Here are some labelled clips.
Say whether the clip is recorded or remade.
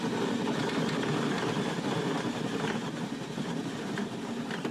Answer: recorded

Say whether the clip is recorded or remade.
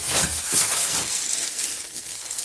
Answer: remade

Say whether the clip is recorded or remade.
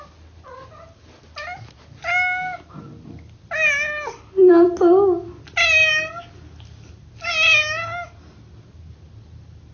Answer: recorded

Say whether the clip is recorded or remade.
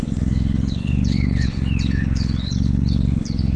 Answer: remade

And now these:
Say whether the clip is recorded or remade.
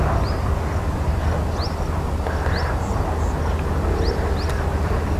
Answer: recorded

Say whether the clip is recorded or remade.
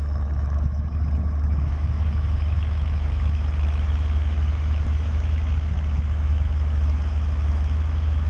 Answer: remade